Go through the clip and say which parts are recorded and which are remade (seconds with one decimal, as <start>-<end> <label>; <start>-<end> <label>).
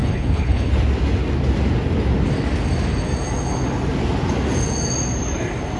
0.0-0.7 remade; 0.7-5.8 recorded